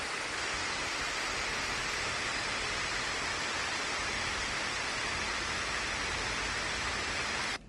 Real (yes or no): yes